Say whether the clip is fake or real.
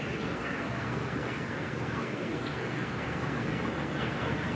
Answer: fake